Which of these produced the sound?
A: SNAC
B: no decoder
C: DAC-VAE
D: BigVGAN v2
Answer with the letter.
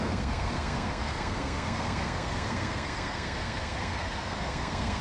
A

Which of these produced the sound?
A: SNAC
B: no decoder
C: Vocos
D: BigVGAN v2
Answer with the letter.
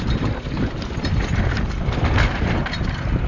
B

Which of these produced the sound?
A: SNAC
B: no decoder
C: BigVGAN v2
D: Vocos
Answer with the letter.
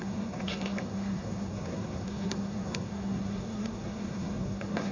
A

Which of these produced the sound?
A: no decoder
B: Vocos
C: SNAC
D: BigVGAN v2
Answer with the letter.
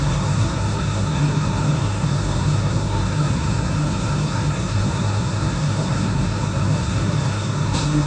C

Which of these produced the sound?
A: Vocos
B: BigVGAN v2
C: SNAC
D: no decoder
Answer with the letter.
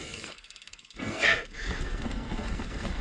C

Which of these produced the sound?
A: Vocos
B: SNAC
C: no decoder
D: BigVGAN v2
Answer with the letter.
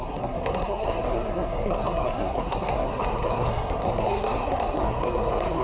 B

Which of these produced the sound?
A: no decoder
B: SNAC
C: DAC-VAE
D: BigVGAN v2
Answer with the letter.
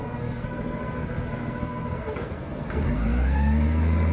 B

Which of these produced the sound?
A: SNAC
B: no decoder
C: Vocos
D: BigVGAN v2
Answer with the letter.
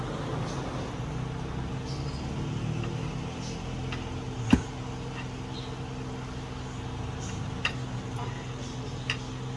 B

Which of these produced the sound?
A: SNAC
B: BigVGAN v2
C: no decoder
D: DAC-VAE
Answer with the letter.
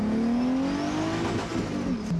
C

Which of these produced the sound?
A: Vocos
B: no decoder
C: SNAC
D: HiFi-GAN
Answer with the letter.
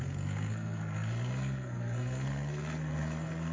C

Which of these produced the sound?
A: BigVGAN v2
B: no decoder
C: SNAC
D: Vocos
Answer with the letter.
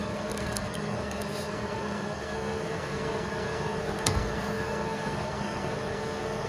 C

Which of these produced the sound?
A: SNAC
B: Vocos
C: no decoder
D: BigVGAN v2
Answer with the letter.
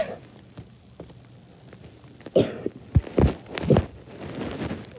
C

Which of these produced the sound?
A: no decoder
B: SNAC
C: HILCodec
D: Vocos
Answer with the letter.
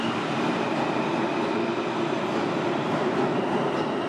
A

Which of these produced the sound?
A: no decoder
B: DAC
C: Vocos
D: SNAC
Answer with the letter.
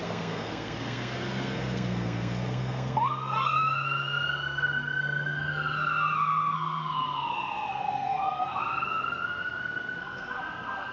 D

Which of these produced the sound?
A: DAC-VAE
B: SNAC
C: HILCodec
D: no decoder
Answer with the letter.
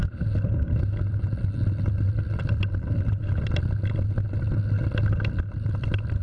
D